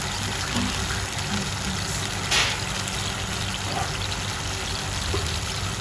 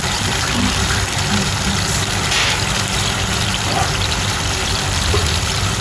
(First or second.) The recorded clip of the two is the first